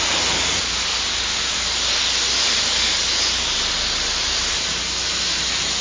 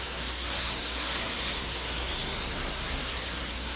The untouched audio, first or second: first